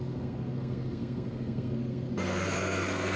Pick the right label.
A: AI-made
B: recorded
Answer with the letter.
A